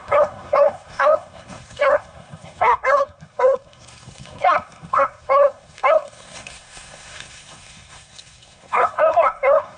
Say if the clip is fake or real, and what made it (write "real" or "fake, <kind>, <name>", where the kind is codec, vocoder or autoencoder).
fake, codec, SNAC